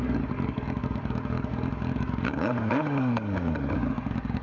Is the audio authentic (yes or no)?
no